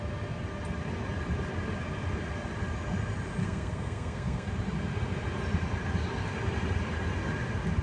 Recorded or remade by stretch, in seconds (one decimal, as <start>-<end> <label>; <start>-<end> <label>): 0.0-3.4 recorded; 3.4-4.5 remade; 4.5-7.8 recorded